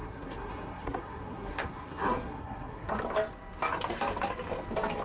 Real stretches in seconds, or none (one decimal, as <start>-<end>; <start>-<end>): 3.0-5.0